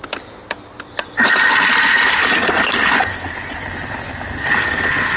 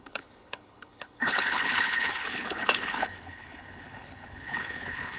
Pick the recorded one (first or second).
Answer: first